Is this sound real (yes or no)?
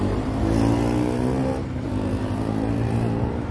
no